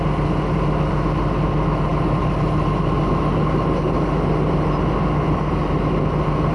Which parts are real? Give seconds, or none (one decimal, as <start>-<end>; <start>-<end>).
0.0-6.5